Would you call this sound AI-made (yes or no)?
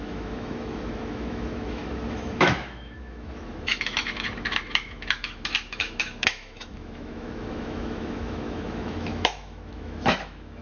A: yes